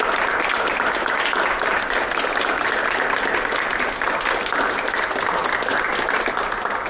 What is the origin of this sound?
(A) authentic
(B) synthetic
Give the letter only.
A